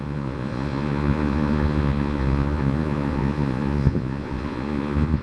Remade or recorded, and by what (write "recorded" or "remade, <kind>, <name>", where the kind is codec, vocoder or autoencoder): remade, vocoder, Vocos